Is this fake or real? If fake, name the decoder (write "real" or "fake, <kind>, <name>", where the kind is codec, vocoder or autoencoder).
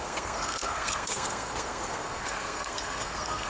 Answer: fake, codec, SNAC